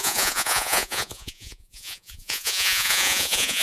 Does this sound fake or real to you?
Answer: fake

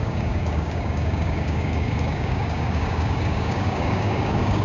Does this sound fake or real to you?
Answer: fake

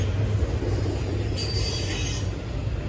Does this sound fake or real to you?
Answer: real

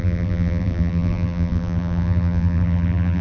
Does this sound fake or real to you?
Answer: fake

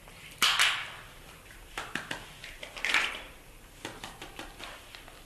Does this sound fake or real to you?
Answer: fake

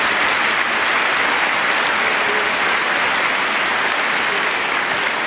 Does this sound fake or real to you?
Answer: real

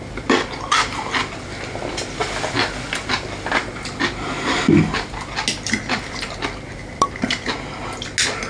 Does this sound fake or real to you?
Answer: real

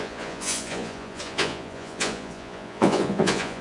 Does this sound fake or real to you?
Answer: fake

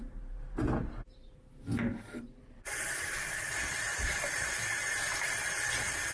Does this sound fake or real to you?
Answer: real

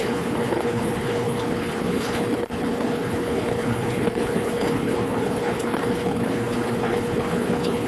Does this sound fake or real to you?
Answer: fake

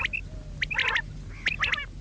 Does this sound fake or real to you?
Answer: real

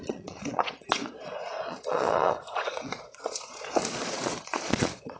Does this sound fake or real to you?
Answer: fake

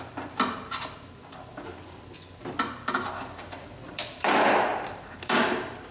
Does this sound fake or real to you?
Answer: fake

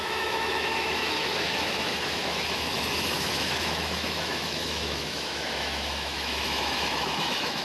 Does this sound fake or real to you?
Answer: fake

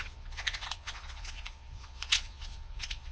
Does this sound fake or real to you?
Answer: fake